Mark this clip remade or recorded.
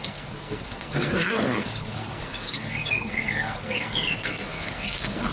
remade